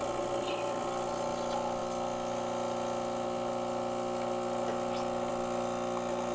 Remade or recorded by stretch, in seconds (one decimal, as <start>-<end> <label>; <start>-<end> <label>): 0.0-6.3 recorded